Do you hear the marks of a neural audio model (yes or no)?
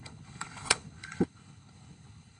yes